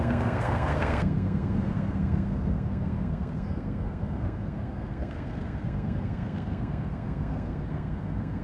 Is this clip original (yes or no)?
no